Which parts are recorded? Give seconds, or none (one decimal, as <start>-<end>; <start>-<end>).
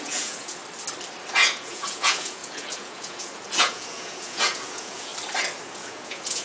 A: 0.6-1.3; 5.1-5.7